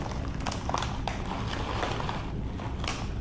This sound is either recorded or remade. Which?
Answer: recorded